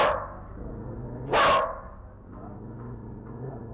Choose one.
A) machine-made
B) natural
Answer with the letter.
B